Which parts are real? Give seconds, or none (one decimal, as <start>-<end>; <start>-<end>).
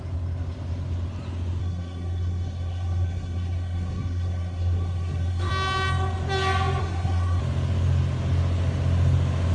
0.0-1.6; 5.5-6.8; 7.4-9.5